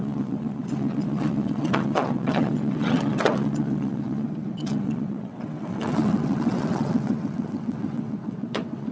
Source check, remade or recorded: remade